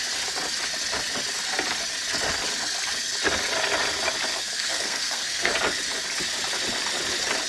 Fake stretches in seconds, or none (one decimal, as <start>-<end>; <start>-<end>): 4.3-5.5